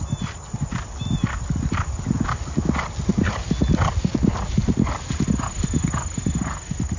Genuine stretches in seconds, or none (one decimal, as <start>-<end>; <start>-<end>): 0.0-7.0

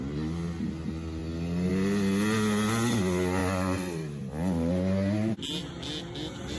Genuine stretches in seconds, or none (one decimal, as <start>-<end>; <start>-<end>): 0.0-6.6

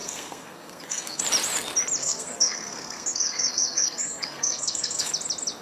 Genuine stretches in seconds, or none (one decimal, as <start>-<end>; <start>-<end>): 1.2-2.0; 5.1-5.6

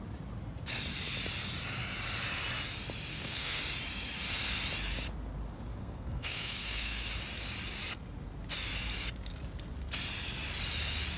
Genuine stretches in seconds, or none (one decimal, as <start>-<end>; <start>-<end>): 0.0-3.1; 3.6-5.8; 7.1-11.2

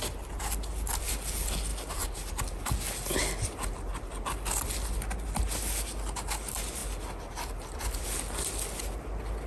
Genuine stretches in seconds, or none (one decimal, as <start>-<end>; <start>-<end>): 0.0-9.5

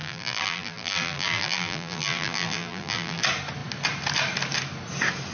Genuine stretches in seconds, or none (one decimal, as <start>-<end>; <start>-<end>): 3.2-5.3

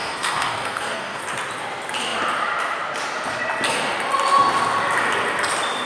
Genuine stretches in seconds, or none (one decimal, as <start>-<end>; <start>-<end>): 1.2-5.9